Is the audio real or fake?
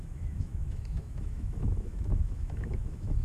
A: fake